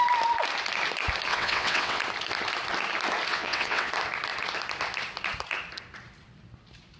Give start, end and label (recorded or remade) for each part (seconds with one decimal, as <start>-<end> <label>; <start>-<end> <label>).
0.0-1.3 recorded; 1.3-2.0 remade; 2.0-3.3 recorded; 3.3-3.9 remade; 3.9-7.0 recorded